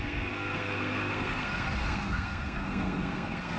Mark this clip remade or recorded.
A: remade